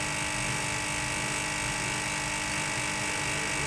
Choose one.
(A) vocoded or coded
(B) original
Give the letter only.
B